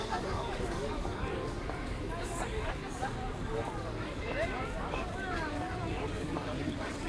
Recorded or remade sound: remade